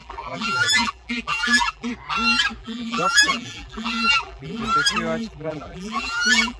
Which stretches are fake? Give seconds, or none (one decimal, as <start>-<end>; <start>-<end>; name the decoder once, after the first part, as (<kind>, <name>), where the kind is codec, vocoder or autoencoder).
0.0-1.9 (vocoder, BigVGAN v2); 2.6-4.6; 5.2-6.6